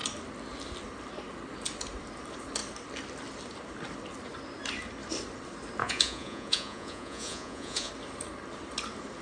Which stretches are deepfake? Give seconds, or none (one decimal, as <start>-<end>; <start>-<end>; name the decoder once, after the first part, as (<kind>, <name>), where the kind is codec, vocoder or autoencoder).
5.8-7.9 (vocoder, Vocos)